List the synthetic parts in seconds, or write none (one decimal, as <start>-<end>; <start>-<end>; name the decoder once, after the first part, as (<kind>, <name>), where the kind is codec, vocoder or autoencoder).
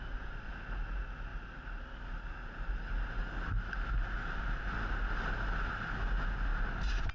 none